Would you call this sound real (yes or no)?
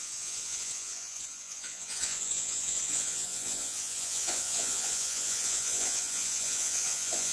no